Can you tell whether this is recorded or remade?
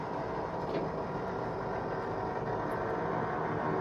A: recorded